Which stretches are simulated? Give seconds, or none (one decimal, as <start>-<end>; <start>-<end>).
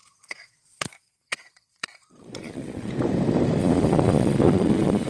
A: 0.0-2.9; 3.6-5.1